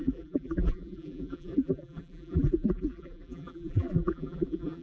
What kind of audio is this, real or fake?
fake